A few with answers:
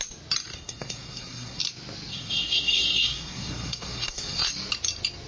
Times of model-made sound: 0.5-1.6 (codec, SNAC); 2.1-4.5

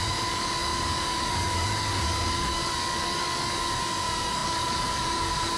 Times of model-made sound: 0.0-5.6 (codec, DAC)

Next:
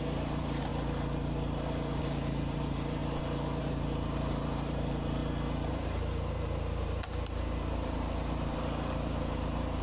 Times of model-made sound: 0.0-0.7 (vocoder, BigVGAN v2); 2.0-3.0; 3.6-5.2; 5.7-9.8

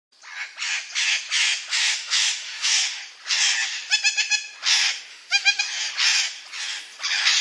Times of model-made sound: 1.7-3.0 (autoencoder, DAC-VAE); 5.1-5.6

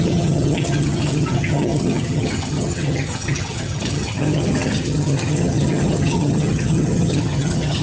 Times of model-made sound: 0.0-7.8 (vocoder, HiFi-GAN)

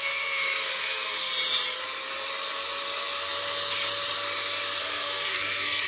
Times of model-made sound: 0.0-1.3 (codec, SNAC); 4.8-5.9